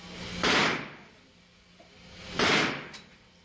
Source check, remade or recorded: recorded